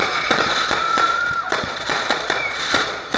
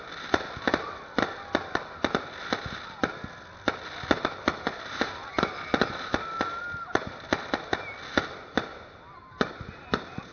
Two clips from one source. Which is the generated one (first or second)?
first